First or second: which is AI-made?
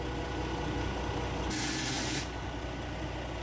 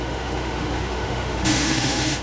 second